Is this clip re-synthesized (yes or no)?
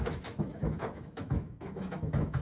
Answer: yes